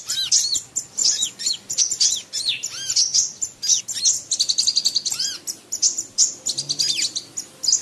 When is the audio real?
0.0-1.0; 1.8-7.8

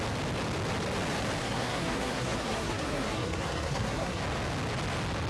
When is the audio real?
0.0-1.4; 4.2-5.3

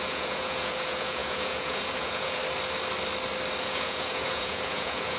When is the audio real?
2.4-3.6

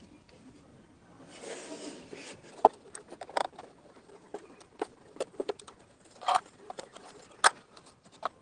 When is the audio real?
0.0-3.4; 7.1-8.4

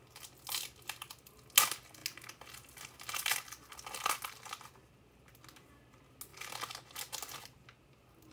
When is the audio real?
0.0-8.3